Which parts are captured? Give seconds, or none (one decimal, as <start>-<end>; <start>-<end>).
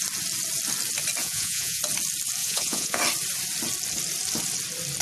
0.0-1.2; 1.8-2.4; 3.0-5.0